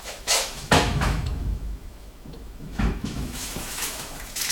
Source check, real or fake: fake